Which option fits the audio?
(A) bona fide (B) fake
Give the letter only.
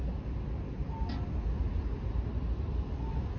A